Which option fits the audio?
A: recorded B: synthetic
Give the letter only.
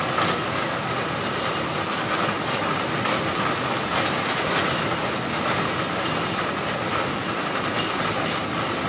A